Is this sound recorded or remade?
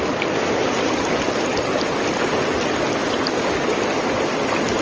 recorded